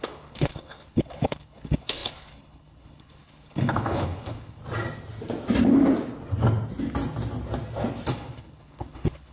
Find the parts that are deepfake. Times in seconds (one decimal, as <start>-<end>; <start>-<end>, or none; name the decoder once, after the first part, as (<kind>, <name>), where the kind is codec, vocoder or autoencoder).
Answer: 0.0-4.6 (codec, HILCodec); 8.1-9.3

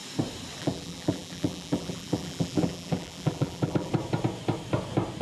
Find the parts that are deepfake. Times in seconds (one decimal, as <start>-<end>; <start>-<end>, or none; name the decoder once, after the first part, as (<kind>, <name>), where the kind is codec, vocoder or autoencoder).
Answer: 0.6-3.9 (vocoder, BigVGAN v2)

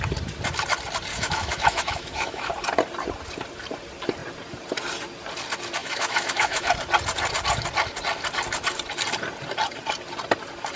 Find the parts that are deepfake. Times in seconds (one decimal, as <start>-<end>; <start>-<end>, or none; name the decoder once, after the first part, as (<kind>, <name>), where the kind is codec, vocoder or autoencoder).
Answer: 1.1-2.5 (autoencoder, DAC-VAE); 5.8-6.7

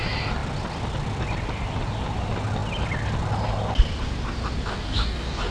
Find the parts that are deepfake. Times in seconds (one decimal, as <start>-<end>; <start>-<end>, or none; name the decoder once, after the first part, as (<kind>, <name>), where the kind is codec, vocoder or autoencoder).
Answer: 4.7-5.5 (codec, DAC)

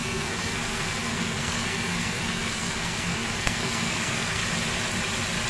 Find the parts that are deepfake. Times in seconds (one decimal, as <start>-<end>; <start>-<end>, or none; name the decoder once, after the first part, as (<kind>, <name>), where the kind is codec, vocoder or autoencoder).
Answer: 0.0-4.4 (codec, SNAC)